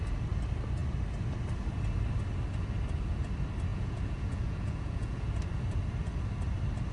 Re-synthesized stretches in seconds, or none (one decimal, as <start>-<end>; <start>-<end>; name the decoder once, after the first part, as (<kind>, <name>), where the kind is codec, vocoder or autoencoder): 3.7-5.3 (vocoder, Vocos)